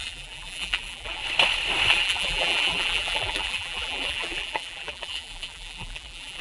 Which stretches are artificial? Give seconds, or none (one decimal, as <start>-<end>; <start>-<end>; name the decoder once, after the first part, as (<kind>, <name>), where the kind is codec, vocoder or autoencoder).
0.0-1.2 (vocoder, BigVGAN v2); 1.9-6.4